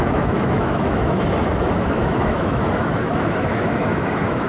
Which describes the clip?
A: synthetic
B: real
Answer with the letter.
A